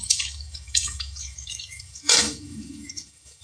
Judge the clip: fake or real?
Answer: fake